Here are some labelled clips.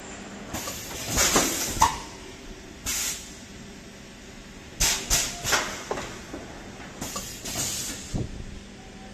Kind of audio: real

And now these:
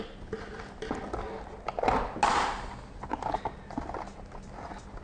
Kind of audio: real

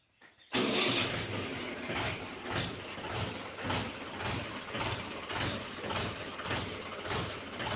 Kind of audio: real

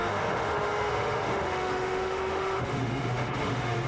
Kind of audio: fake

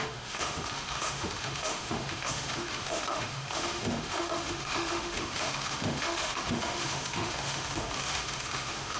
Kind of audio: fake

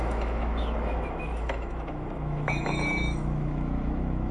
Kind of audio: fake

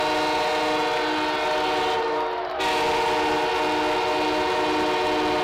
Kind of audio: real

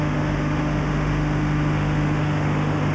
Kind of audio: fake